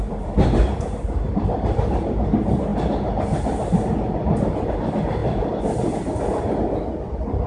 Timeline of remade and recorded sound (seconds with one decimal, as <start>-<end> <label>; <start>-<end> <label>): 0.0-7.5 recorded